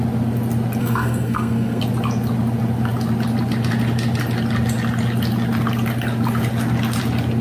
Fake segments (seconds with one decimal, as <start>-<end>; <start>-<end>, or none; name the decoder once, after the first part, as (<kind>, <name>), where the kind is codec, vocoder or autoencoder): 0.8-1.8 (codec, SNAC)